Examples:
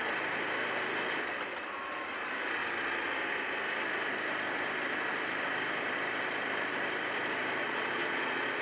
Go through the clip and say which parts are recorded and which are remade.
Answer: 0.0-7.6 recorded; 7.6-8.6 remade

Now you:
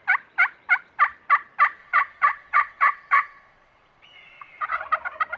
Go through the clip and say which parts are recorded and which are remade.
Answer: 0.0-1.8 recorded; 1.8-4.8 remade; 4.8-5.4 recorded

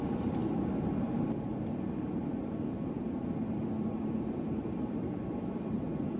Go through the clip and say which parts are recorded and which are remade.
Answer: 0.0-2.3 remade; 2.3-4.1 recorded; 4.1-6.2 remade

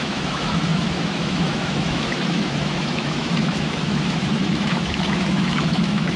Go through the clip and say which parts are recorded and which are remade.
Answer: 0.0-6.2 remade

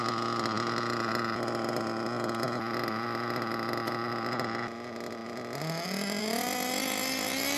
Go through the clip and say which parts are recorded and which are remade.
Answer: 0.0-7.6 recorded

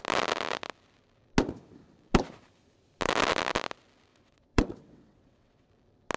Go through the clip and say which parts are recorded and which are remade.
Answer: 0.0-4.1 recorded; 4.1-5.7 remade; 5.7-6.2 recorded

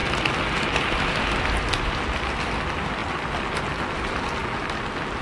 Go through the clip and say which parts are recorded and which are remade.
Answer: 0.0-1.9 remade; 1.9-5.2 recorded